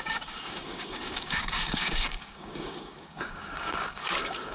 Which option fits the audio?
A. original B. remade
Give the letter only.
B